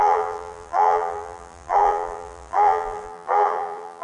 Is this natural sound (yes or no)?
no